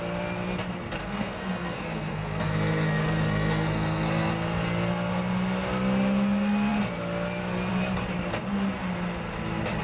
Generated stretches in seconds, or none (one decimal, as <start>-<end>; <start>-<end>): 1.0-4.3